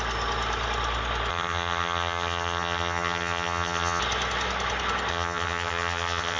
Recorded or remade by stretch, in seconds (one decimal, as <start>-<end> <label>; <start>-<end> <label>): 0.0-1.3 recorded; 1.3-4.0 remade; 4.0-5.1 recorded; 5.1-6.4 remade